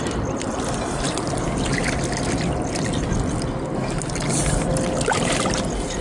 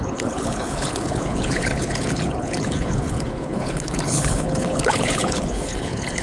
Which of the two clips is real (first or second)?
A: first